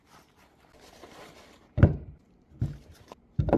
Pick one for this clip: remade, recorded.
remade